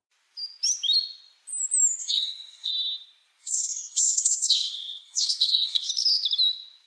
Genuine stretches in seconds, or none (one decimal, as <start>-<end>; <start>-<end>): 0.0-2.0; 2.7-3.4; 5.9-6.9